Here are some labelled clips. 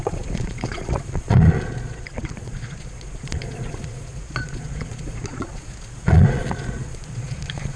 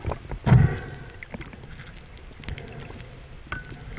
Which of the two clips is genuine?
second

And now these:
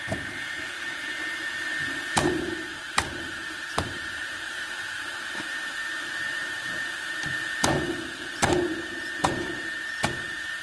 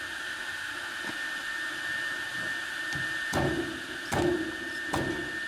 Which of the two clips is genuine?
second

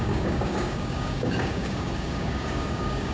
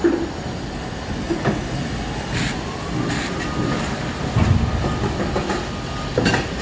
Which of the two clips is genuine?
second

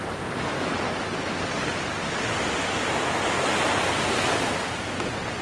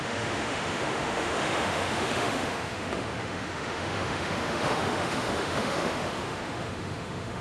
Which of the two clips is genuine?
first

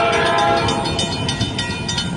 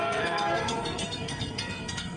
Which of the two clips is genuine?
first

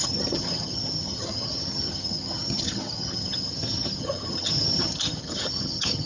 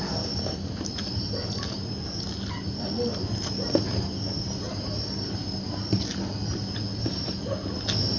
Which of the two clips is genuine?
second